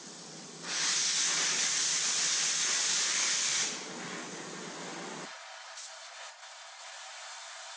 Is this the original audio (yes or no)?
yes